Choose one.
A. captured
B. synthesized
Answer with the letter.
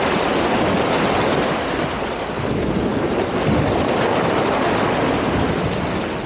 A